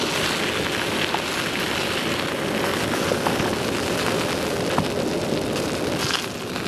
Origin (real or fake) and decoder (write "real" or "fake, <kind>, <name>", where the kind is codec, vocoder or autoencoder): real